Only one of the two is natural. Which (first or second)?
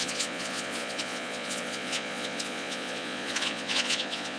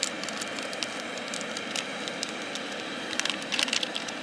second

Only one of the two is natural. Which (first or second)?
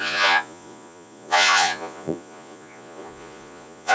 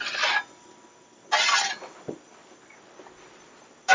second